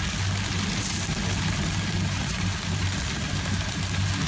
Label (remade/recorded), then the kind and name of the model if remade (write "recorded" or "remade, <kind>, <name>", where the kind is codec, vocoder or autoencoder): recorded